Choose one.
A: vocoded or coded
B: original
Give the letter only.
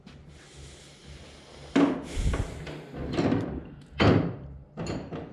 B